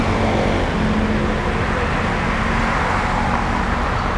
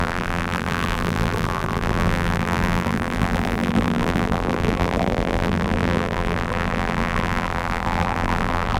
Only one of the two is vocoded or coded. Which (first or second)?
second